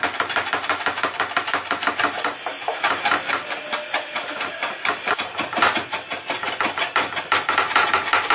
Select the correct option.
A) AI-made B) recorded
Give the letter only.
B